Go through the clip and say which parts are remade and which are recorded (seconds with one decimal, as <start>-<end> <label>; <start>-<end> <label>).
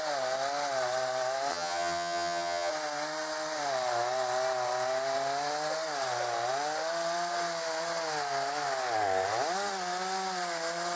0.0-1.5 recorded; 1.5-2.7 remade; 2.7-11.0 recorded